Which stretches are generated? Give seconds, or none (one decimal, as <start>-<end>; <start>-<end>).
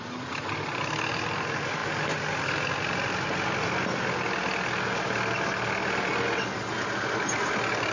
none